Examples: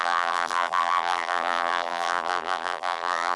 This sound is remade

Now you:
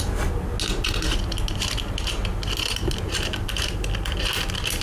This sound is recorded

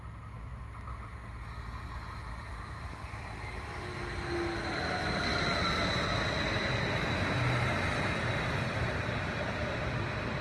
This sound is recorded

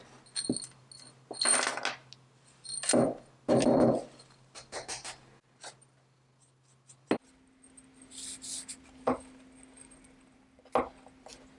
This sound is recorded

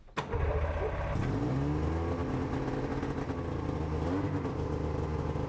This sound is recorded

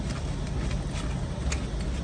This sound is recorded